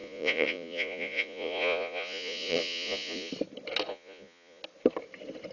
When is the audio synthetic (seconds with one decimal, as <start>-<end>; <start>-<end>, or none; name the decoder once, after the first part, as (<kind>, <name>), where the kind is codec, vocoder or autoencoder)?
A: 0.0-3.3 (vocoder, Vocos); 3.9-4.6